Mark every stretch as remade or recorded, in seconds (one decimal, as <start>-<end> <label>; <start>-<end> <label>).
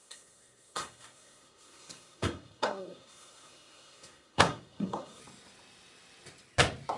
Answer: 0.0-5.2 remade; 5.2-7.0 recorded